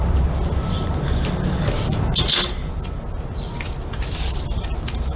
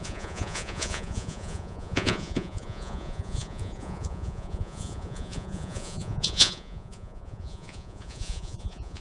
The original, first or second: first